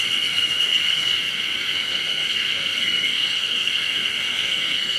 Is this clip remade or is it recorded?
remade